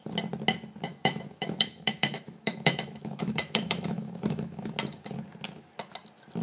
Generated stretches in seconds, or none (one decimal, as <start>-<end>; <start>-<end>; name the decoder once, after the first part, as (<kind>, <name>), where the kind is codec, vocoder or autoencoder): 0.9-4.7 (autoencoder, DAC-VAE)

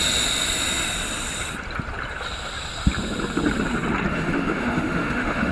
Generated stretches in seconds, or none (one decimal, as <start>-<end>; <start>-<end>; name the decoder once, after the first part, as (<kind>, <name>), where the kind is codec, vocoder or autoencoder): 4.1-5.5 (autoencoder, DAC-VAE)

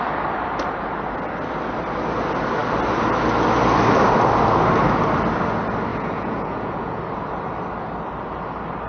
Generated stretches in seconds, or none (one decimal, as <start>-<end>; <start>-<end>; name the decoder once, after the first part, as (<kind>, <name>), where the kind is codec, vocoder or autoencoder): 5.9-7.0 (vocoder, Vocos)

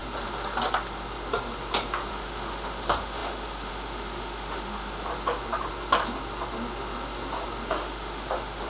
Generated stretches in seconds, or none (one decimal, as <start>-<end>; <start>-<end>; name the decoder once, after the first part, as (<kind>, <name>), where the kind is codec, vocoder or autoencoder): 2.1-5.1 (autoencoder, DAC-VAE); 7.7-8.7

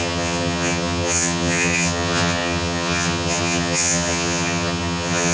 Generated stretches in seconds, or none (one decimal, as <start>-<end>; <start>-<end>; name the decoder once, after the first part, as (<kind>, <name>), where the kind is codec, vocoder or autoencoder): 0.0-5.3 (vocoder, HiFi-GAN)

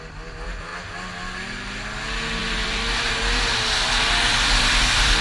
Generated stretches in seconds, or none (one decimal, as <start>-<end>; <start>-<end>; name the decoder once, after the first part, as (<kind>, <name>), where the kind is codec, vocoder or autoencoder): none

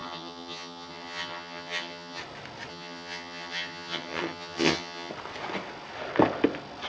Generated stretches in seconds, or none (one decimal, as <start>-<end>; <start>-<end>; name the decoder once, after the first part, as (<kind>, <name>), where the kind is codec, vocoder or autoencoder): 0.0-2.2 (vocoder, HiFi-GAN); 2.7-5.1